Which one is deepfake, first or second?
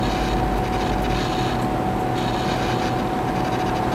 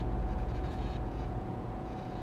second